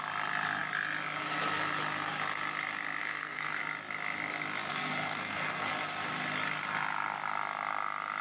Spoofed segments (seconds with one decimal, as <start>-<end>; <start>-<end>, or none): 3.0-3.6; 4.7-5.7

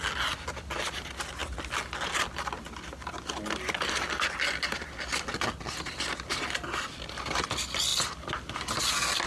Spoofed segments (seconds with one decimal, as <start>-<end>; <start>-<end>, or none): none

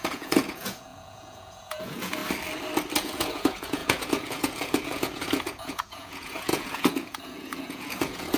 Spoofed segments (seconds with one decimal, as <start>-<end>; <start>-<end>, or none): 0.0-2.2; 3.0-8.4

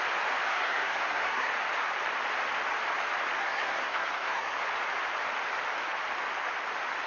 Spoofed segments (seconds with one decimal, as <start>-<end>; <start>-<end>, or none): 0.5-1.5; 3.4-4.6

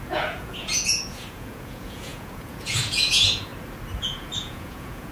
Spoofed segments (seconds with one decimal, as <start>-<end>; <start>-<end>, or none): 0.0-3.5; 4.0-5.1